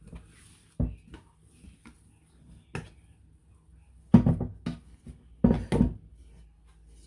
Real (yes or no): yes